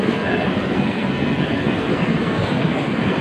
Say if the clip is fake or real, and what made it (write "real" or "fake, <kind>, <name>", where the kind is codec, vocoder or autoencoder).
fake, codec, SNAC